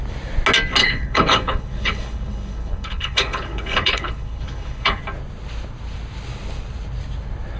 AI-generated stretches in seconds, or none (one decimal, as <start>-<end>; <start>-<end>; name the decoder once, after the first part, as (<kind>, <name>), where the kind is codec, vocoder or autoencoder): 0.8-5.0 (codec, HILCodec)